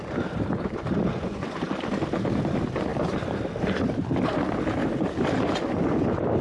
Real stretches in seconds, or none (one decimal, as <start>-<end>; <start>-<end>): 0.0-1.1; 1.7-6.4